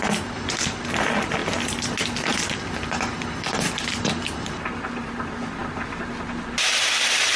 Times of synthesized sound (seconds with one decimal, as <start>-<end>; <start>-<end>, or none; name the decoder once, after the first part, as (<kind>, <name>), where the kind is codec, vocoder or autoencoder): 1.4-2.6 (vocoder, BigVGAN v2)